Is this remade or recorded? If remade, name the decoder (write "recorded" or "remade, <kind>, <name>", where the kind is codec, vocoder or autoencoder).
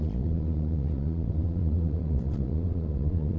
remade, vocoder, Vocos